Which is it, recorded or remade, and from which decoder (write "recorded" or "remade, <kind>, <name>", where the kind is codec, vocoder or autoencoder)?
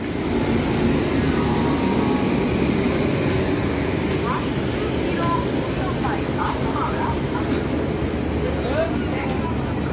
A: recorded